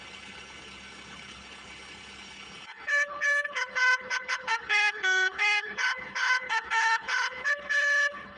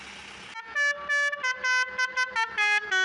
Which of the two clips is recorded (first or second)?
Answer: second